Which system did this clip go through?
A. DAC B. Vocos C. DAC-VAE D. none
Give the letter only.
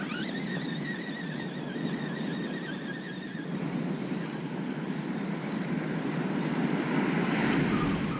D